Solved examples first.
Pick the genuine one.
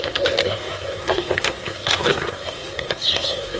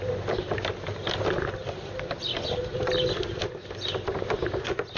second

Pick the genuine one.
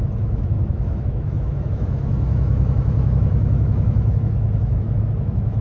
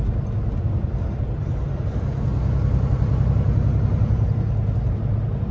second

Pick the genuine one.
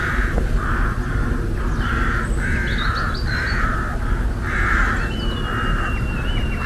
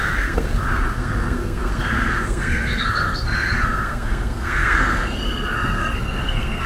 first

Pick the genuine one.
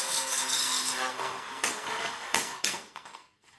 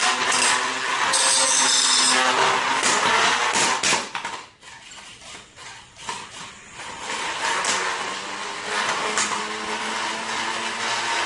second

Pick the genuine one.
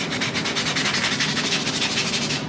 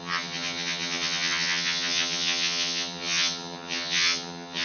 first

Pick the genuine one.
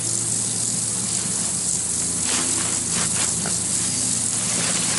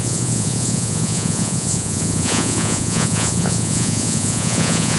first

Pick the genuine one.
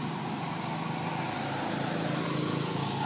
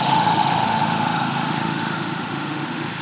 first